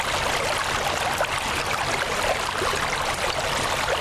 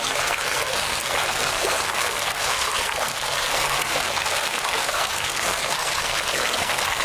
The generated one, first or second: second